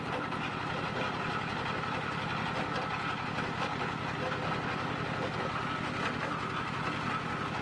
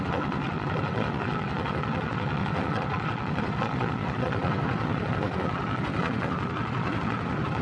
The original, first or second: first